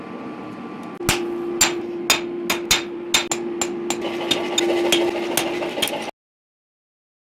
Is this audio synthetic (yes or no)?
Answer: no